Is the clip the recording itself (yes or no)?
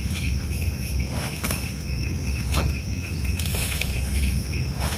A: no